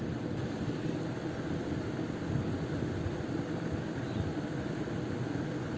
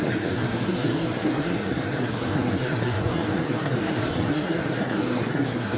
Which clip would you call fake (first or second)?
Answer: second